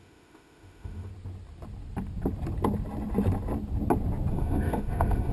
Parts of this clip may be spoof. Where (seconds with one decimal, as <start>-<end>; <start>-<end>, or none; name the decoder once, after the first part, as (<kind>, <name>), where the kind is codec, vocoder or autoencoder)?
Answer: 0.0-1.1 (autoencoder, DAC-VAE); 4.3-5.3

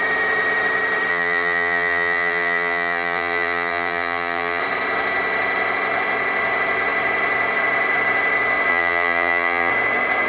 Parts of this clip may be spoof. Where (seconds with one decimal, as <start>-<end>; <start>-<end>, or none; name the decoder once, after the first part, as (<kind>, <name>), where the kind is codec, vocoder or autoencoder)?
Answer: 1.1-4.6 (vocoder, BigVGAN v2); 8.7-9.7